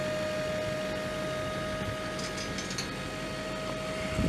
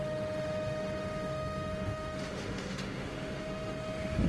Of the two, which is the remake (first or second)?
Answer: second